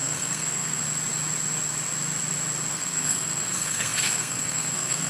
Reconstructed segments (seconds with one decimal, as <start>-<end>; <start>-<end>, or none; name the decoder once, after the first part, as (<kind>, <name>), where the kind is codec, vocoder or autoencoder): 0.0-0.8 (codec, SNAC); 2.7-5.1